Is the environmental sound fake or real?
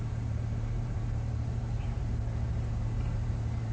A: fake